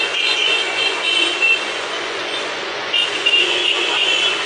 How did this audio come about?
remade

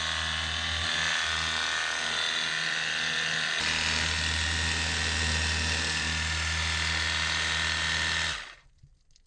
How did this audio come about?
recorded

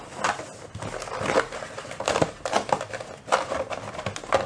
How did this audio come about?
recorded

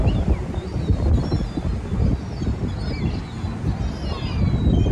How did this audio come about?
recorded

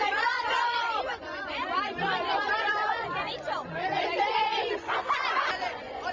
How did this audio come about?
remade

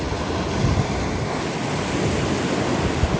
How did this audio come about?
recorded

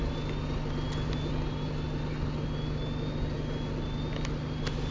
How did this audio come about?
recorded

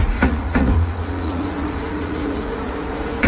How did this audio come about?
remade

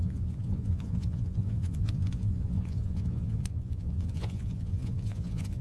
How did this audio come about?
remade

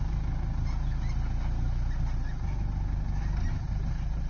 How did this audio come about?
recorded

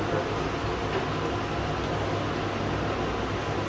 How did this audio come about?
recorded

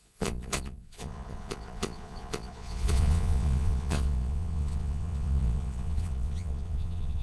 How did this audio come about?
remade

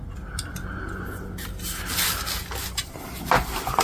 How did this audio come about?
recorded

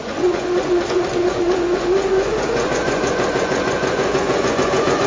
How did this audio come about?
remade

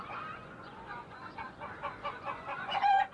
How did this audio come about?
remade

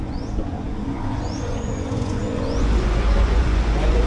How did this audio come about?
remade